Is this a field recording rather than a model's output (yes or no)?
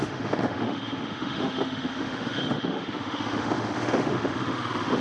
no